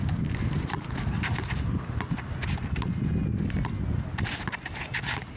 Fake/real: real